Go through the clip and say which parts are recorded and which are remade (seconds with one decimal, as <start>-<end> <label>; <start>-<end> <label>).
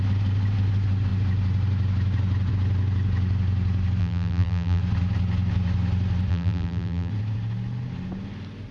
0.0-4.0 recorded; 4.0-4.8 remade; 4.8-6.3 recorded; 6.3-7.1 remade; 7.1-8.7 recorded